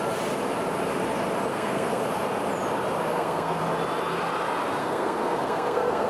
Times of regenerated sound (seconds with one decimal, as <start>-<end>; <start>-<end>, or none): 1.5-2.0; 3.1-3.6; 4.8-6.1